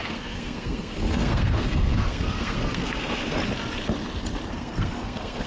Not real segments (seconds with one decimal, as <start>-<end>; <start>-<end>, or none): 0.0-3.4; 4.5-5.5